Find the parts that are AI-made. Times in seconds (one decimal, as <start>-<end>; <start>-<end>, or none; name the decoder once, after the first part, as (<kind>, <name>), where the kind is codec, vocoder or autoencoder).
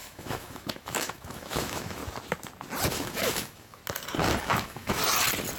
0.0-2.0 (autoencoder, DAC-VAE); 2.9-3.8; 4.4-5.0